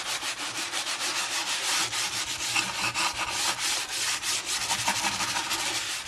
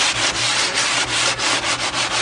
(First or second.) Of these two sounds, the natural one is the second